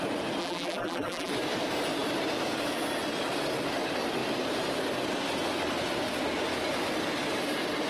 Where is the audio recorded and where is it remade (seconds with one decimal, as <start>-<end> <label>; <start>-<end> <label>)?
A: 0.0-0.4 recorded; 0.4-1.3 remade; 1.3-7.9 recorded